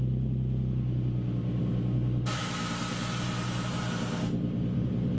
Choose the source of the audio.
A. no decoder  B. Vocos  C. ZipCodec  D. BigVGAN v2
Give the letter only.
A